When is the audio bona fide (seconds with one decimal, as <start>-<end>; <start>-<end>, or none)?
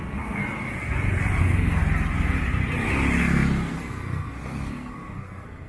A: 0.4-1.4; 1.8-3.2